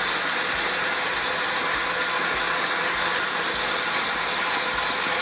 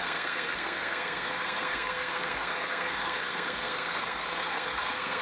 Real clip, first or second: first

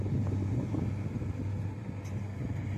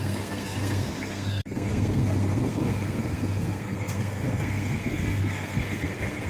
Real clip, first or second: first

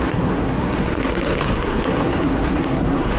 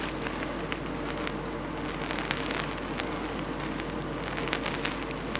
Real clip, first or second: second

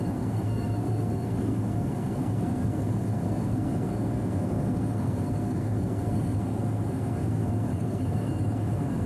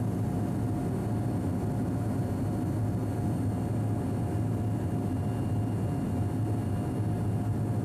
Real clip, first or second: second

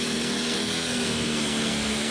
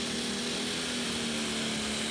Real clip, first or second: second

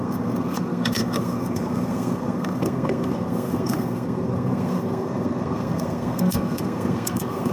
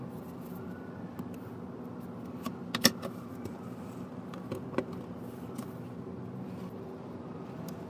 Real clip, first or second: second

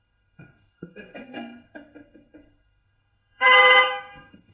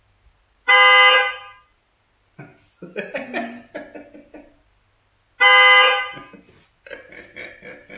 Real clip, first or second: second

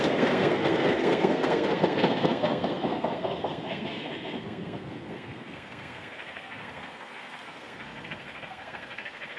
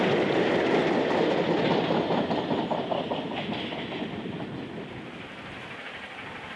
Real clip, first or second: second